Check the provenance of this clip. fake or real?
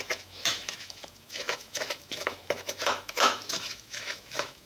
fake